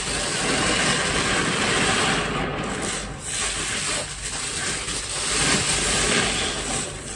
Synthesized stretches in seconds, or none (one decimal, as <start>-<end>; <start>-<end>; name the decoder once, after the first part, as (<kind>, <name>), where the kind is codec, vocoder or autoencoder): none

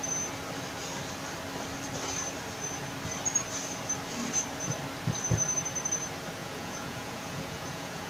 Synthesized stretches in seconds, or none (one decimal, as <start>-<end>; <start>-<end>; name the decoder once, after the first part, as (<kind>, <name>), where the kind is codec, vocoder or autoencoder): 6.4-8.1 (vocoder, Vocos)

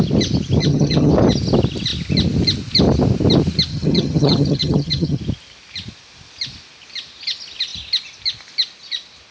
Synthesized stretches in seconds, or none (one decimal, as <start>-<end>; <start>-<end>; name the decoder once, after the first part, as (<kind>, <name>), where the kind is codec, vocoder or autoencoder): 0.6-1.1 (vocoder, HiFi-GAN); 3.7-5.2

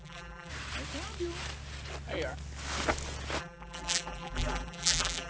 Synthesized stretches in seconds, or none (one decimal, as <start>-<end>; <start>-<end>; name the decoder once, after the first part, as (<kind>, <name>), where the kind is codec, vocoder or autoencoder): 0.0-0.5 (vocoder, BigVGAN v2); 3.4-5.3

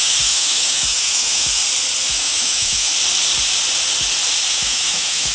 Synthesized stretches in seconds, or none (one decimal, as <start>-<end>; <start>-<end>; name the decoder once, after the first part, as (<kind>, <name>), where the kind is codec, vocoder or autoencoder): 0.0-1.6 (autoencoder, DAC-VAE); 2.1-2.9; 4.5-5.3

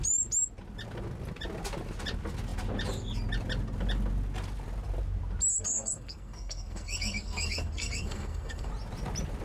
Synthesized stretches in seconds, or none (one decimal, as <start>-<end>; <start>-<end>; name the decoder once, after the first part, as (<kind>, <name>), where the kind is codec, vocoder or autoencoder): 5.5-8.7 (codec, SNAC)